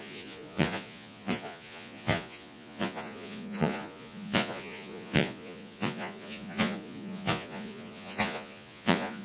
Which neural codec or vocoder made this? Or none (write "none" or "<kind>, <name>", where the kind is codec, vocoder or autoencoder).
vocoder, Vocos